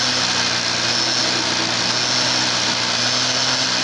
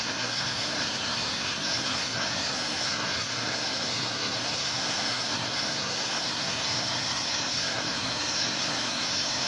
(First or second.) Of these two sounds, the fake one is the second